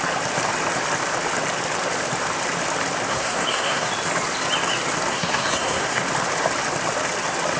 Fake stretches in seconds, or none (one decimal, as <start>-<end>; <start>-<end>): 3.1-3.9; 5.1-6.0